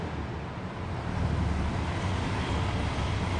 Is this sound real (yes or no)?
yes